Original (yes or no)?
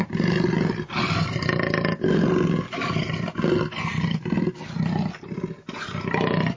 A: yes